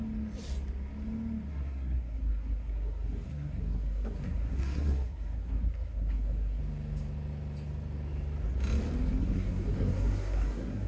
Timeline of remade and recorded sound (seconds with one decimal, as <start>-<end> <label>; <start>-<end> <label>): 0.0-1.5 recorded; 1.5-6.6 remade; 6.6-9.2 recorded; 9.2-10.9 remade